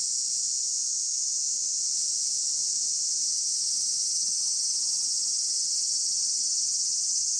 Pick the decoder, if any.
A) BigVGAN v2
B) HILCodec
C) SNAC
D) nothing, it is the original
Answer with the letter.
D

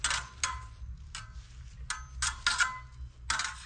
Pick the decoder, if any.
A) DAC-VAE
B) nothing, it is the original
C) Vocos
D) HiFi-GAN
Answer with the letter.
B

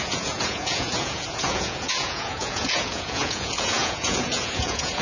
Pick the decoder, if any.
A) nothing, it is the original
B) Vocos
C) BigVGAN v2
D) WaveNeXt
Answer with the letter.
B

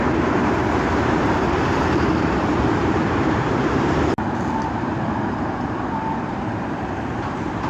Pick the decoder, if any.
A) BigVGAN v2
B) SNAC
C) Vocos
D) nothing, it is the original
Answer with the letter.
A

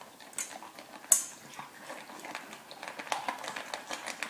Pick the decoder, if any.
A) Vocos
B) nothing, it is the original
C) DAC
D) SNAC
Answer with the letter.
B